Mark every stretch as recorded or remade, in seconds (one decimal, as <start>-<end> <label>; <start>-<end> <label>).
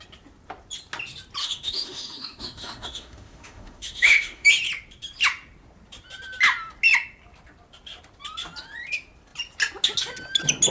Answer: 0.0-1.4 recorded; 1.4-4.5 remade; 4.5-10.7 recorded